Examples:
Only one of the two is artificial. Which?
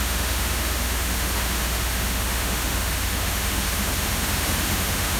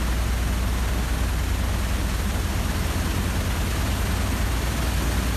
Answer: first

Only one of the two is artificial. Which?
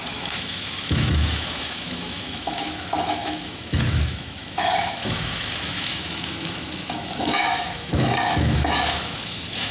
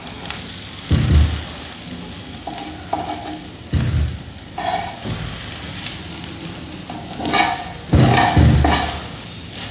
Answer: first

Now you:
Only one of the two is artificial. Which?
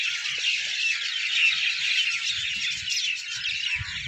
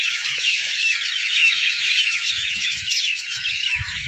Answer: second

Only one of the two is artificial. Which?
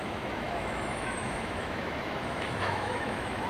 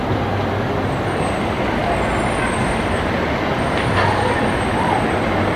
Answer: first